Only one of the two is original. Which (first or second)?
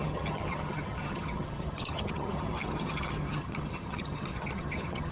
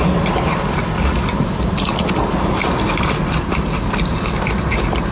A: second